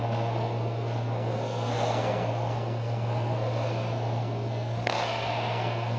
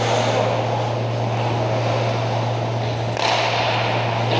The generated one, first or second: first